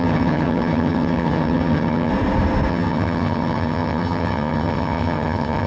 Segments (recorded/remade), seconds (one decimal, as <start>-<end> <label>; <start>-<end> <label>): 0.0-2.1 remade; 2.1-2.7 recorded; 2.7-5.7 remade